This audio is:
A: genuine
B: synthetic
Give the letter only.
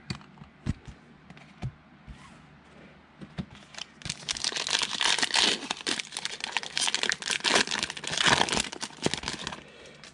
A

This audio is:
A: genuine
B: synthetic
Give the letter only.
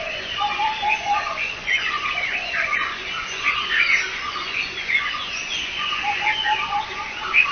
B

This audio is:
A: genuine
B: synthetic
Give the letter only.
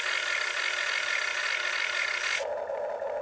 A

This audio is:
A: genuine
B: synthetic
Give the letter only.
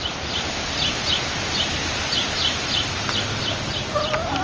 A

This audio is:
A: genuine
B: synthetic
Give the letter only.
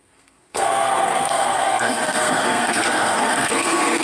B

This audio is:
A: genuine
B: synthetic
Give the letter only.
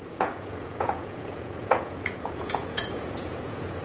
B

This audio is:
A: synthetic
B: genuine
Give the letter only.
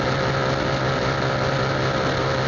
B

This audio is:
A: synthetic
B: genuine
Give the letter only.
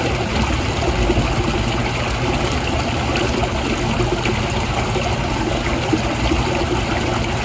B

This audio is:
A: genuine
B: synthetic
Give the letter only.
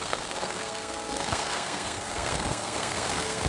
B